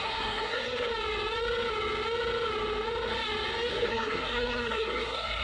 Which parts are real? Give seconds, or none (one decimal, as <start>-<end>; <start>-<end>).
0.9-3.7